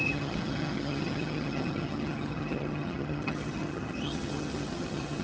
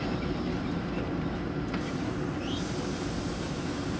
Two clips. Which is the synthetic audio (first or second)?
first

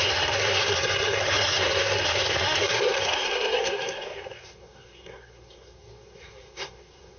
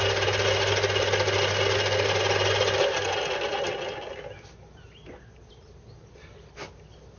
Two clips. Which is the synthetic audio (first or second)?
first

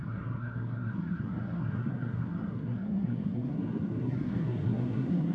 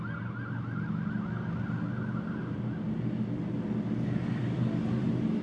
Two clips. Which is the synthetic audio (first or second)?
first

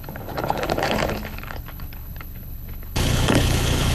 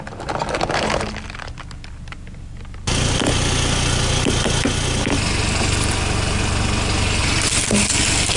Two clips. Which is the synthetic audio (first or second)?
first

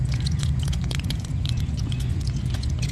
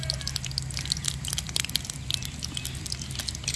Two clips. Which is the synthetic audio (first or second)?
first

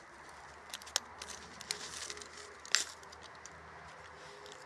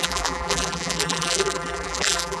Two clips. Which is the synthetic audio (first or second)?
second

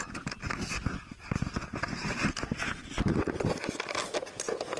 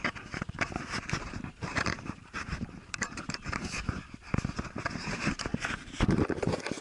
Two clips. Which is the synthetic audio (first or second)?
second